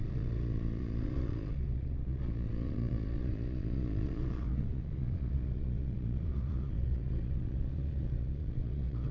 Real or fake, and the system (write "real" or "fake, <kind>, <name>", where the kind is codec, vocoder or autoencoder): fake, vocoder, Vocos